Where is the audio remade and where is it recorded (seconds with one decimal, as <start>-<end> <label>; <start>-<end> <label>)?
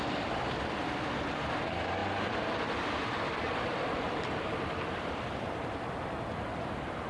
0.0-7.1 remade